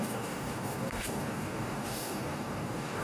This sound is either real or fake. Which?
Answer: fake